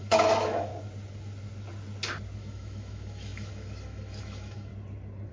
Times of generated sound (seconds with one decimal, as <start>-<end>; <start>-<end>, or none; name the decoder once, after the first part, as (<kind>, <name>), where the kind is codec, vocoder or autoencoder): 0.0-0.7 (autoencoder, DAC-VAE); 2.4-4.7